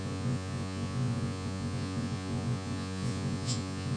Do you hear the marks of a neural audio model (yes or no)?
yes